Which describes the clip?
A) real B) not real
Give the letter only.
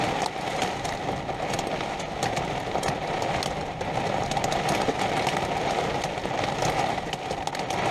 A